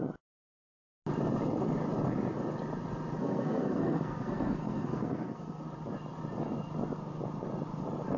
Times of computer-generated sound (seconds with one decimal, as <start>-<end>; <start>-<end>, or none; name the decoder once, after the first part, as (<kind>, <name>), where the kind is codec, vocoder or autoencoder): 3.2-5.6 (codec, SNAC)